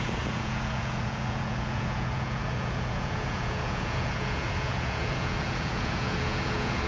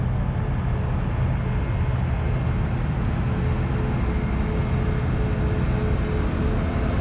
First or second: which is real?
second